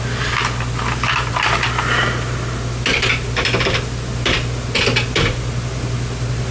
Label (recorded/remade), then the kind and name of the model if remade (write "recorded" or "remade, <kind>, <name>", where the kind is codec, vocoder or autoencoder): recorded